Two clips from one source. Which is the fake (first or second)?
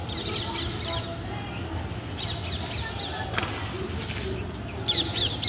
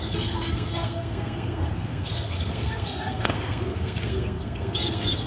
second